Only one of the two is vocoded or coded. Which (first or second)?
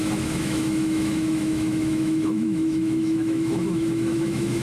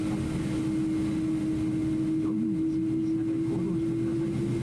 first